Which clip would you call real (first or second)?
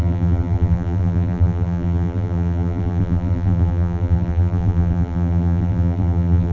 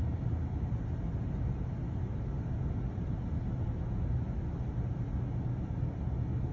second